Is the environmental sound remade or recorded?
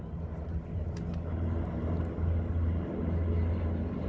recorded